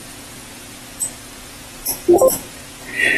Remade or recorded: remade